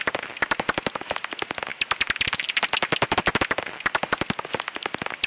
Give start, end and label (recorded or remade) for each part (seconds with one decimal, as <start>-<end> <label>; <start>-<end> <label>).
0.0-5.3 recorded